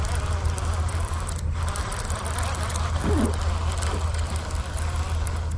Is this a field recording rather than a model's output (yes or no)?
yes